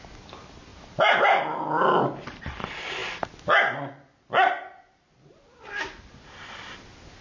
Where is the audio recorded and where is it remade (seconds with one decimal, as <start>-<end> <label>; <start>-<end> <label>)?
0.0-7.2 recorded